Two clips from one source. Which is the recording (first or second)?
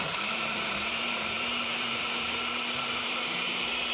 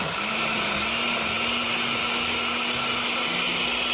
second